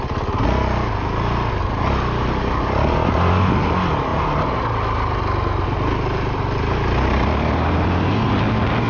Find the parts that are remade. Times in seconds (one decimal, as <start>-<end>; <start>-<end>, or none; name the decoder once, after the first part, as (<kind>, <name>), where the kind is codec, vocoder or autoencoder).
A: none